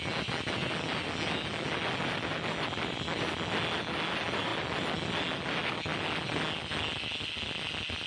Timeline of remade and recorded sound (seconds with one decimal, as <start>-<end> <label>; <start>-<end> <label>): 0.0-8.1 recorded